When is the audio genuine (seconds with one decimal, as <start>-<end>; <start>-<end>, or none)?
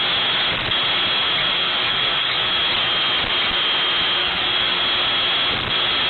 0.0-1.4; 2.5-4.2; 4.8-6.1